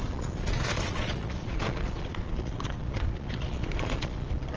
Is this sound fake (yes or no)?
yes